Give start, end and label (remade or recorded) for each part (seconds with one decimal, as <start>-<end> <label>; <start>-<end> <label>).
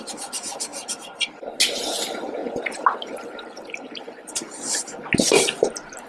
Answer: 0.0-2.4 recorded; 2.4-4.8 remade; 4.8-6.1 recorded